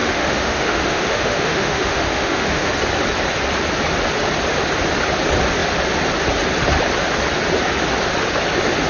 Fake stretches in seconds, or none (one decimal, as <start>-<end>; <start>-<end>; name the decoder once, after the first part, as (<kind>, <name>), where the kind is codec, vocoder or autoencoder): 0.0-2.7 (autoencoder, DAC-VAE)